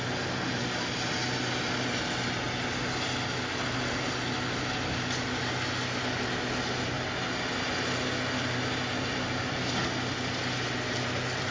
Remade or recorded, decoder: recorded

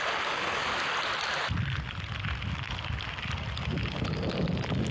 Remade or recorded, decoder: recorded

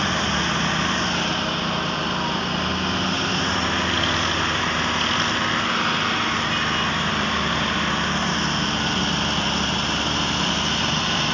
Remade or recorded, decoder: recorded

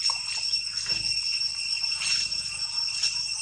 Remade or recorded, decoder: recorded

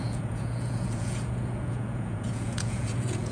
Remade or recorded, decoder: remade, vocoder, Vocos